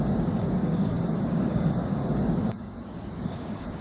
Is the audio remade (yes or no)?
yes